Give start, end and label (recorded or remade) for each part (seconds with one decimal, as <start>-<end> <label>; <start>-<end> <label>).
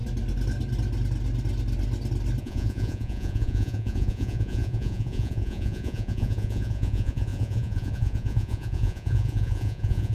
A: 0.0-2.4 recorded; 2.4-10.1 remade